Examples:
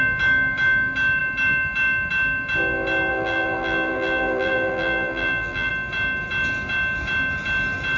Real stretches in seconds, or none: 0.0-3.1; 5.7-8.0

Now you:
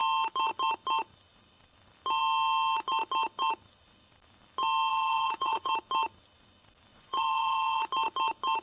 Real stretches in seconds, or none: 0.0-4.9; 5.7-6.9; 7.8-8.6

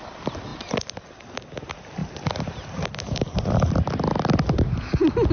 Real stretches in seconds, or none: 0.0-5.3

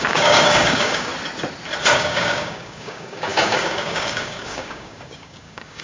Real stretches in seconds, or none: 1.1-1.9

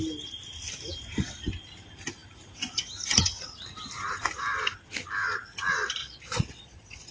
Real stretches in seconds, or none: 0.0-6.0

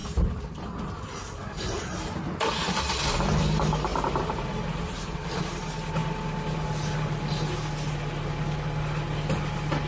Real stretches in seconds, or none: 0.6-3.9; 5.4-9.9

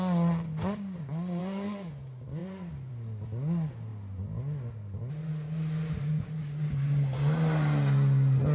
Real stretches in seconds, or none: 0.0-1.4; 1.9-8.5